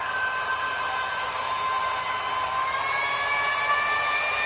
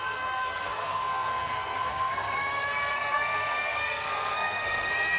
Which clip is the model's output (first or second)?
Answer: second